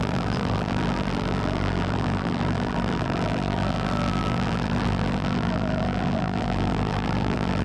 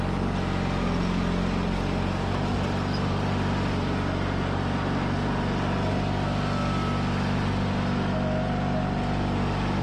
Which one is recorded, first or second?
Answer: second